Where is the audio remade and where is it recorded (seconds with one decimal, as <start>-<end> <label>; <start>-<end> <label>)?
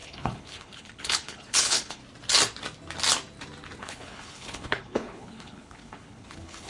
0.0-2.0 remade; 2.0-3.8 recorded; 3.8-6.7 remade